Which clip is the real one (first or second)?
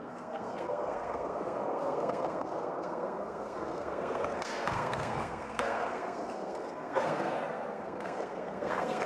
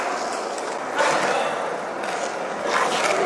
second